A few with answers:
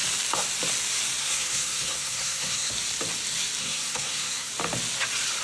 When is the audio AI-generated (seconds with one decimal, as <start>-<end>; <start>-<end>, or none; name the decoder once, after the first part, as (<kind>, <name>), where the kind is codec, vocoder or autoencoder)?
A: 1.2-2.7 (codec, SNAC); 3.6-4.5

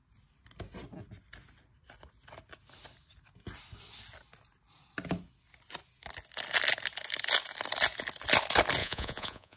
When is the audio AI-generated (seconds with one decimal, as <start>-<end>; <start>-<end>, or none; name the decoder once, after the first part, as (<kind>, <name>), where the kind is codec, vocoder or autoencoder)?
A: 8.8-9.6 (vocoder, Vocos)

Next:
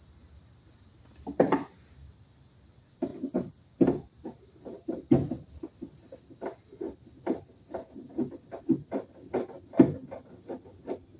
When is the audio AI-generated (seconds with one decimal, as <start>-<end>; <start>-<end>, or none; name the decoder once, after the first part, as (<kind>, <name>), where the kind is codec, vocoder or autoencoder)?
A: none

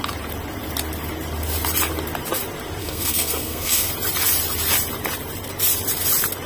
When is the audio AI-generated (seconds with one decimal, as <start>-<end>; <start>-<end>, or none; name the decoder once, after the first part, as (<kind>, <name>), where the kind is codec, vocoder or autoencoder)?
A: 2.8-3.9 (codec, SNAC)